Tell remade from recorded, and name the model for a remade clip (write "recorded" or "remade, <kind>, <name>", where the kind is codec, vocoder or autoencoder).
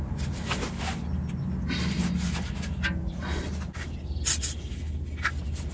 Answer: recorded